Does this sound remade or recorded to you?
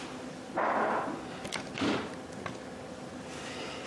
recorded